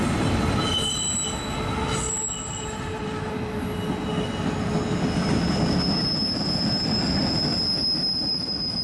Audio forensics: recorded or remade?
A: recorded